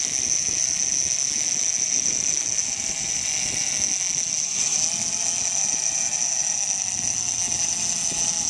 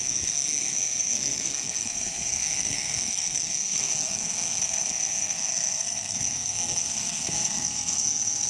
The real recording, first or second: first